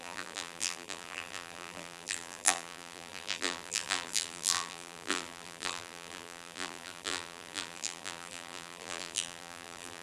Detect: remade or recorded remade